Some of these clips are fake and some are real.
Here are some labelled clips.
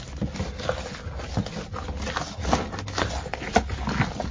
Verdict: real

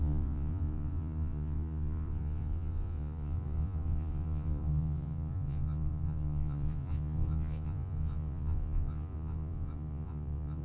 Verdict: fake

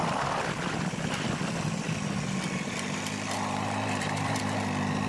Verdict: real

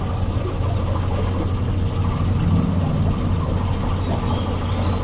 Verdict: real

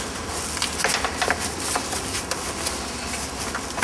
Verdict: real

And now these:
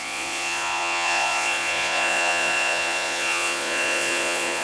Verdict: fake